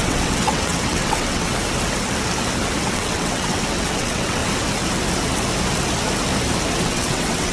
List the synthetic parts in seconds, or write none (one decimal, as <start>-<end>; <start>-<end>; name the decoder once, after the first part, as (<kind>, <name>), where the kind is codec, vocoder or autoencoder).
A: 0.0-1.5 (vocoder, WaveNeXt); 2.9-4.4; 6.8-7.5